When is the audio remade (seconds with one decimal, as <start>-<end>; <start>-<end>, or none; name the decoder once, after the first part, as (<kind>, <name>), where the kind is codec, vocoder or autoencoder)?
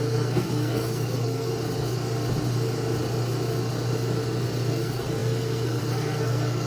0.0-1.5 (codec, SNAC); 4.7-6.7